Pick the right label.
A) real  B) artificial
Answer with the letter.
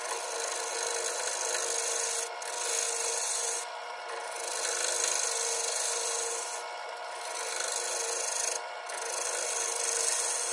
A